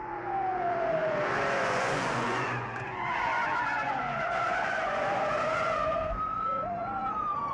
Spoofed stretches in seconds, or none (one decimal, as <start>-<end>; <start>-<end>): 0.0-7.5